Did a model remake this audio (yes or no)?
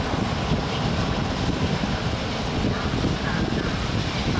no